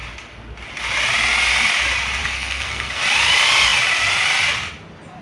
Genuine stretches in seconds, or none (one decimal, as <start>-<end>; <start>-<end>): 0.0-2.2; 3.0-5.2